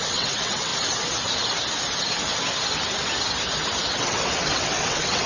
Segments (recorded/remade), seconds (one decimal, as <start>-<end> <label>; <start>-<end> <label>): 0.0-0.7 remade; 0.7-3.9 recorded; 3.9-5.3 remade